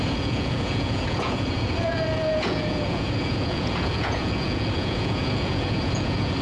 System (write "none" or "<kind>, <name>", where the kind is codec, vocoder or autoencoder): vocoder, Vocos